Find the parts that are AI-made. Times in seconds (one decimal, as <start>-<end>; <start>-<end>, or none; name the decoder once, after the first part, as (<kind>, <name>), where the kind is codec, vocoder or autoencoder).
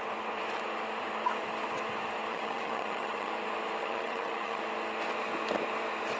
2.3-3.3 (vocoder, HiFi-GAN); 3.8-4.6